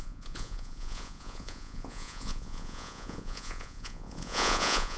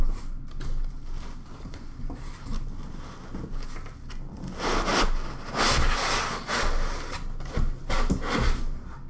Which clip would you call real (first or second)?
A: second